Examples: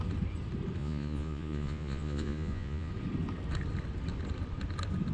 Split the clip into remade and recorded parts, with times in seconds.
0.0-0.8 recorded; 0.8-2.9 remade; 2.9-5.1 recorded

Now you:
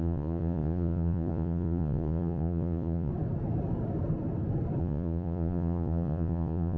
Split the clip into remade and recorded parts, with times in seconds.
0.0-3.1 remade; 3.1-4.8 recorded; 4.8-6.8 remade

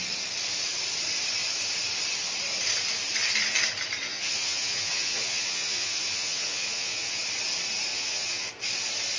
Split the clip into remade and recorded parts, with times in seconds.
0.0-4.0 recorded; 4.0-7.2 remade; 7.2-7.9 recorded; 7.9-8.5 remade; 8.5-9.2 recorded

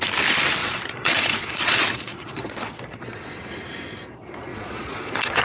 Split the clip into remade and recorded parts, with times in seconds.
0.0-0.6 recorded; 0.6-3.5 remade; 3.5-4.5 recorded; 4.5-5.4 remade

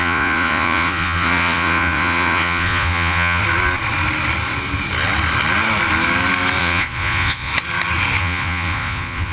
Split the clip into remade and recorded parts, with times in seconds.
0.0-3.4 remade; 3.4-6.6 recorded; 6.6-7.5 remade; 7.5-8.2 recorded; 8.2-9.3 remade

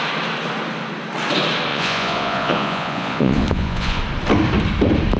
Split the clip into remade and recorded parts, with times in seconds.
0.0-1.7 recorded; 1.7-4.0 remade; 4.0-5.2 recorded

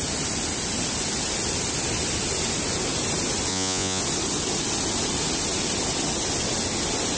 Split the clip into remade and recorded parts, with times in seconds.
0.0-3.5 recorded; 3.5-4.0 remade; 4.0-7.2 recorded

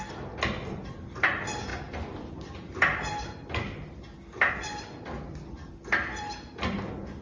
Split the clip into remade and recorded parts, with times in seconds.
0.0-7.2 recorded